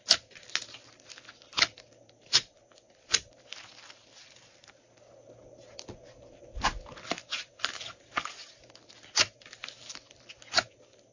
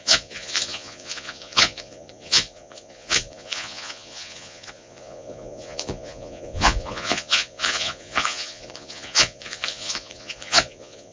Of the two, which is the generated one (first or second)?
second